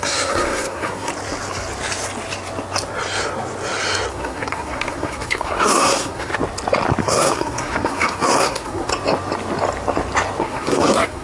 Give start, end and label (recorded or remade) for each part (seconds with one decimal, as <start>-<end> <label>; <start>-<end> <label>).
0.0-1.1 remade; 1.1-4.1 recorded; 4.1-6.3 remade; 6.3-7.0 recorded; 7.0-8.9 remade; 8.9-10.4 recorded; 10.4-11.2 remade